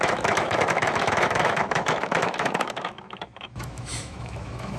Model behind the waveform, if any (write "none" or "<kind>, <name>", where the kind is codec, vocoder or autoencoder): autoencoder, DAC-VAE